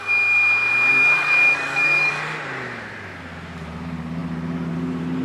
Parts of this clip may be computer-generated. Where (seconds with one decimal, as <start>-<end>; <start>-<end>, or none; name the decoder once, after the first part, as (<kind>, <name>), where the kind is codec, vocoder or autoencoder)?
0.9-2.1 (codec, DAC)